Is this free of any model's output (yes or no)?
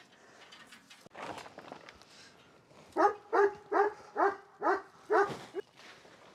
yes